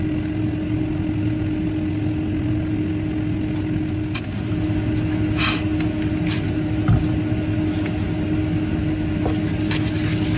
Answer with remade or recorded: recorded